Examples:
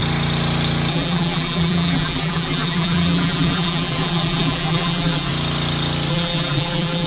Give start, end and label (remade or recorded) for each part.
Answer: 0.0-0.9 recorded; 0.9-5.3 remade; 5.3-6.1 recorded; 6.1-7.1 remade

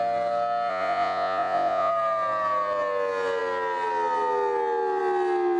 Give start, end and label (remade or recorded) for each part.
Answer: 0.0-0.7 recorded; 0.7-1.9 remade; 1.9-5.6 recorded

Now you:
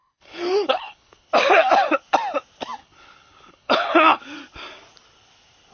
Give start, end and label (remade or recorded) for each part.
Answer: 0.0-1.3 remade; 1.3-2.8 recorded; 2.8-4.2 remade; 4.2-5.7 recorded